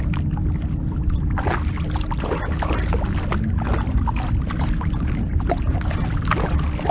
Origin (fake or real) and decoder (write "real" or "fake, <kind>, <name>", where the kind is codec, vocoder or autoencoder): real